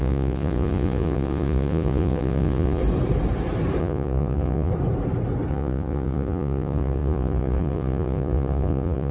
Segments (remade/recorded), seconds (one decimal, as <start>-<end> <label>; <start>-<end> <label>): 0.0-2.8 remade; 2.8-3.8 recorded; 3.8-4.7 remade; 4.7-5.5 recorded; 5.5-9.1 remade